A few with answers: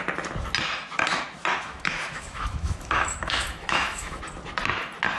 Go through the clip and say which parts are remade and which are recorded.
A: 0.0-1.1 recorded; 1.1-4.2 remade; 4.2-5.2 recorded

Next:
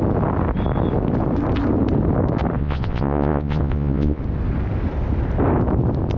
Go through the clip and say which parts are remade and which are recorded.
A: 0.0-2.6 recorded; 2.6-4.2 remade; 4.2-6.2 recorded

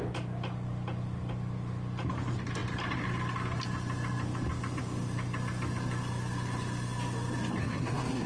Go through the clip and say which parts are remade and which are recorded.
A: 0.0-7.6 recorded; 7.6-8.3 remade